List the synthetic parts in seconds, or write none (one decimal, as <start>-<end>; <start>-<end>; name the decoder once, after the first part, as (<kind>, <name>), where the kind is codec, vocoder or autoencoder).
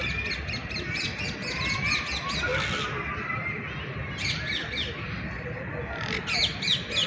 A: none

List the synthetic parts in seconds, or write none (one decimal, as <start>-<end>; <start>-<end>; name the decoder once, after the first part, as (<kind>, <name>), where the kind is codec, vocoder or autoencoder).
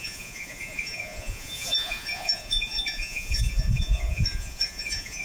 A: 0.0-5.2 (vocoder, Vocos)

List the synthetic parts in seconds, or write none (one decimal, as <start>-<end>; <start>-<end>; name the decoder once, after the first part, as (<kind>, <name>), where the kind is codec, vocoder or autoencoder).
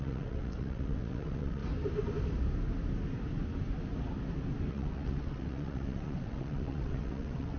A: 0.0-1.6 (vocoder, WaveNeXt); 4.7-7.6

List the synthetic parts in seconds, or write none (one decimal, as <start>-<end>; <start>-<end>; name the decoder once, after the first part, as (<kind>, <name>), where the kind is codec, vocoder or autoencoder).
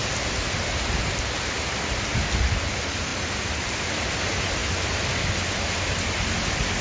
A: none